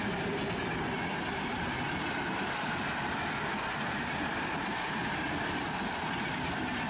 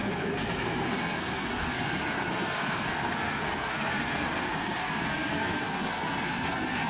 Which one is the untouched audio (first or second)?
first